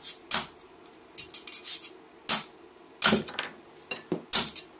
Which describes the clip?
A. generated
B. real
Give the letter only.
B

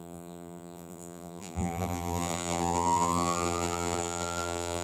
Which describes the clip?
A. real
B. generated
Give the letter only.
B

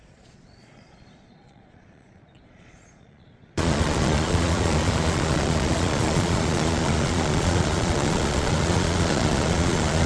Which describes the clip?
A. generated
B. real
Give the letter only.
A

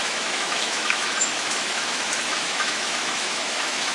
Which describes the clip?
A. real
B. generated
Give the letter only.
B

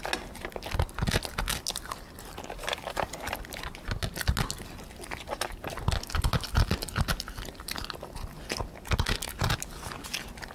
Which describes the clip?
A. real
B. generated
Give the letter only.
A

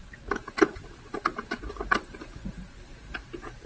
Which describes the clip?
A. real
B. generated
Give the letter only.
A